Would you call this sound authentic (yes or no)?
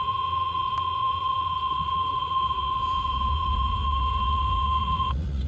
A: no